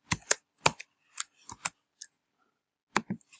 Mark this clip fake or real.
real